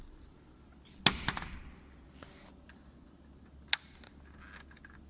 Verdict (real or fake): real